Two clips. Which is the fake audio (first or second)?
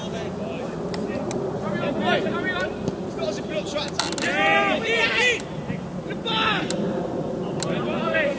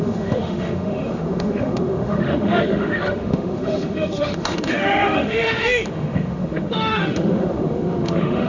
second